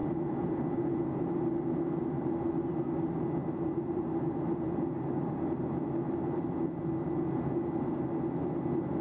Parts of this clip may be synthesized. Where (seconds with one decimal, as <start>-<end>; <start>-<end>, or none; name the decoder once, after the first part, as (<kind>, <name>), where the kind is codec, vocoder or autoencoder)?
none